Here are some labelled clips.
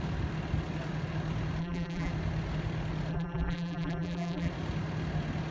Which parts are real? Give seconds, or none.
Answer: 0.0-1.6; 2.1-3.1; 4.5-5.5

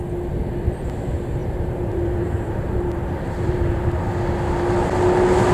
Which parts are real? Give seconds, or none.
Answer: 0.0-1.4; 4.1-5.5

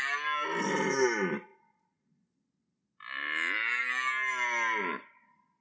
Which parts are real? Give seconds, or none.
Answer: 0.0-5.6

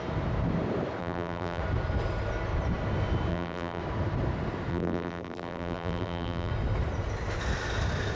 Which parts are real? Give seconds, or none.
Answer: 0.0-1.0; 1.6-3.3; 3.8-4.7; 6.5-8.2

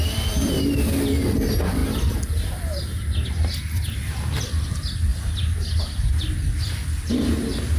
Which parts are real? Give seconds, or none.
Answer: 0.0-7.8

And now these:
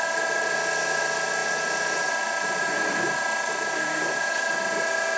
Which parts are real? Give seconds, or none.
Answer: 0.0-1.4; 4.5-5.2